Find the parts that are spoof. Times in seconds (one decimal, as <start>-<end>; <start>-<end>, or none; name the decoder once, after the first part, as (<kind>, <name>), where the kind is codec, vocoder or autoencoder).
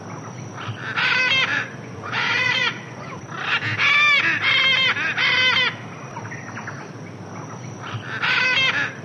1.5-3.1 (vocoder, Vocos)